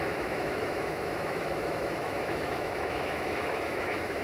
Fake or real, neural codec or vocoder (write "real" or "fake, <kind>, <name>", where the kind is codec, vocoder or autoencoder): fake, autoencoder, DAC-VAE